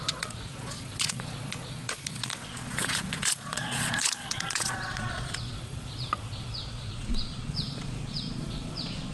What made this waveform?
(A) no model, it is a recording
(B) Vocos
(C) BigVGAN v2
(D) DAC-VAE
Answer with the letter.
B